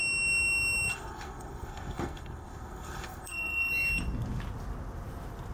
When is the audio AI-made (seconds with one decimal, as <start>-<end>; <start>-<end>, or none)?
0.9-3.7